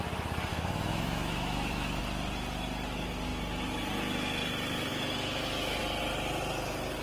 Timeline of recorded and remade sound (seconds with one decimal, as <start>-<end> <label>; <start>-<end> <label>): 0.0-0.5 recorded; 0.5-2.0 remade; 2.0-4.9 recorded; 4.9-5.8 remade; 5.8-7.0 recorded

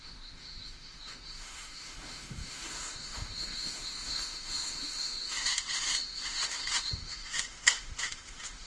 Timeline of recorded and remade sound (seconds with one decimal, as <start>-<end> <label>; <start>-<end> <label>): 0.0-8.7 remade

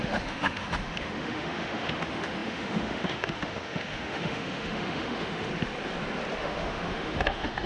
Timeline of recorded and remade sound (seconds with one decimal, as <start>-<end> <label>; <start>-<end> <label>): 0.0-5.5 remade; 5.5-6.4 recorded; 6.4-7.7 remade